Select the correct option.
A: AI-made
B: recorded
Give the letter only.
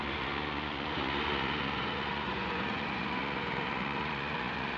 A